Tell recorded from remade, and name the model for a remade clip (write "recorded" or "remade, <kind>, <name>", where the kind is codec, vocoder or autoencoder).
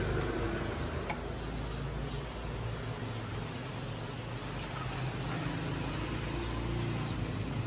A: recorded